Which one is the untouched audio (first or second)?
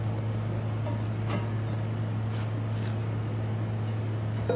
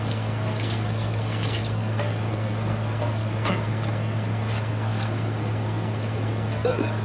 first